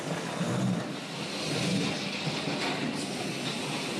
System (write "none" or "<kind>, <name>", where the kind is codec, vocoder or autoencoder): none